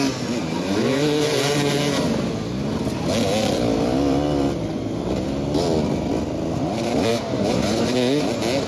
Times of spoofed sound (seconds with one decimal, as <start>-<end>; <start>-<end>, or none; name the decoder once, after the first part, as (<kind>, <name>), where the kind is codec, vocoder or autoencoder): none